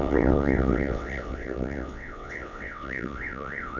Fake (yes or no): yes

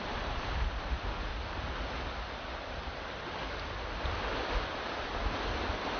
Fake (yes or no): no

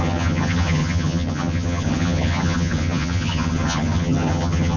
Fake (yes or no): yes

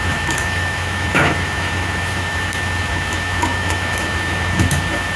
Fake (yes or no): yes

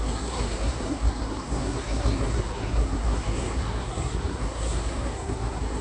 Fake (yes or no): yes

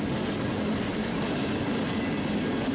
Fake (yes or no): no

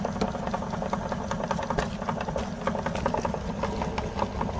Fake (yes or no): no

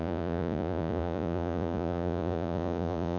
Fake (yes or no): yes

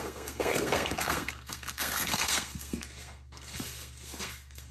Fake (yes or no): yes